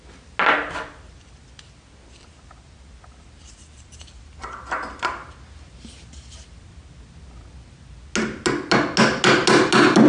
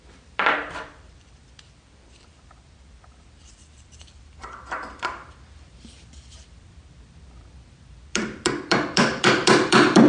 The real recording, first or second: first